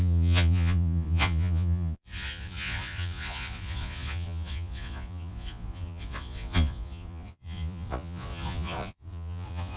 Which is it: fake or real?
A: fake